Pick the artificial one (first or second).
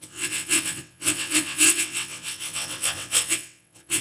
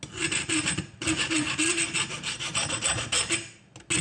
first